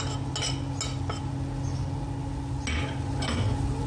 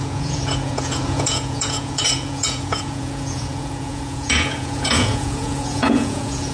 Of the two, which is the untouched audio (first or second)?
first